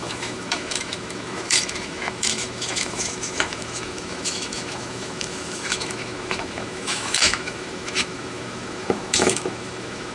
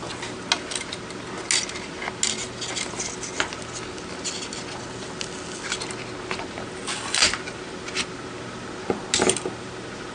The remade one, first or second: first